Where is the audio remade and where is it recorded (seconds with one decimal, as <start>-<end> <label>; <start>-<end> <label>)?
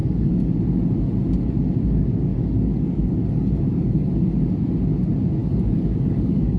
0.0-0.5 remade; 0.5-2.3 recorded; 2.3-4.1 remade; 4.1-5.4 recorded; 5.4-6.6 remade